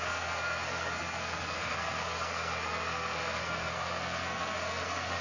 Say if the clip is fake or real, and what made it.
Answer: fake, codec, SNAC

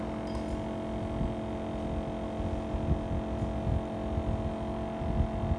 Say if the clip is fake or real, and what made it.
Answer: real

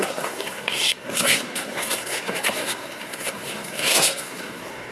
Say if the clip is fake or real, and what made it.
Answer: fake, codec, SNAC